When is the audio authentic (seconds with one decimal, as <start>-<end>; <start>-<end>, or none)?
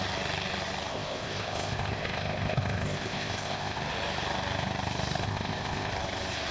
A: 0.0-0.9; 3.8-5.2; 5.9-6.5